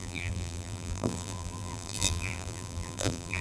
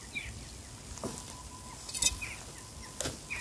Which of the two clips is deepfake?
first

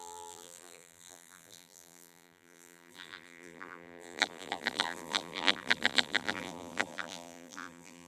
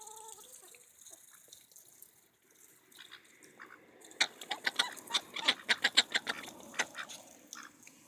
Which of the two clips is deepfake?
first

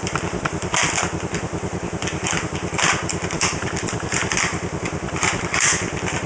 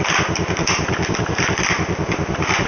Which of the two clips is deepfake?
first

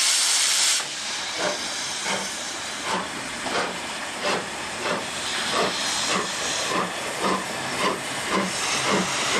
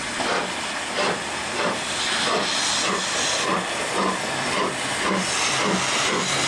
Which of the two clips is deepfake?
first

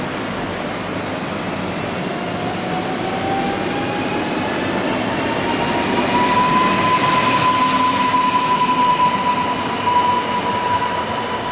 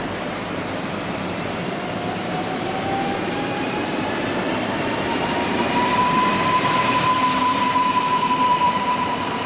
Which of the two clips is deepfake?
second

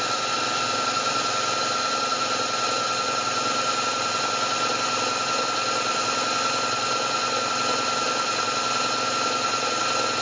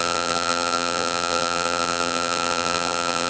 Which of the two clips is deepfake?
second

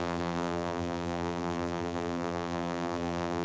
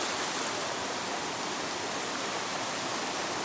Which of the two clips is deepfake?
first